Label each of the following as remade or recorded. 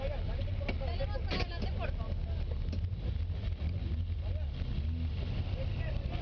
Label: recorded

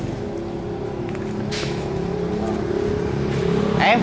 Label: recorded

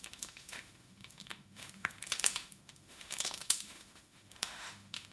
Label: remade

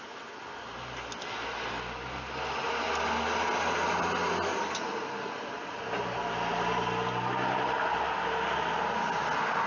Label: recorded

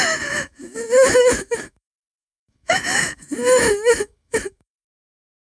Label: remade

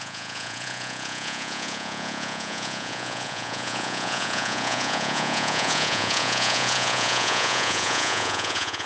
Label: remade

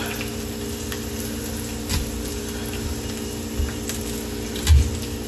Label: recorded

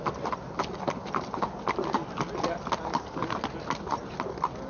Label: recorded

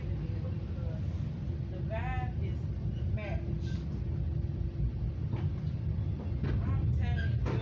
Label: recorded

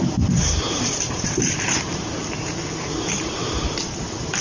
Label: remade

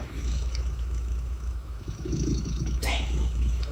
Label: remade